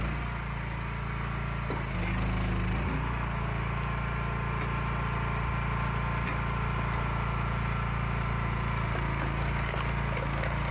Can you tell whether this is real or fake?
real